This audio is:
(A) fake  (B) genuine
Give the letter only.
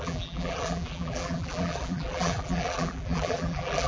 A